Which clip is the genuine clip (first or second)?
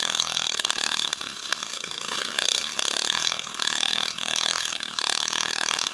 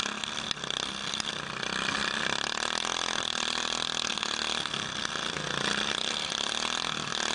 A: second